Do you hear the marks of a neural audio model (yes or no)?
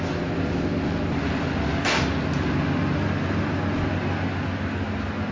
no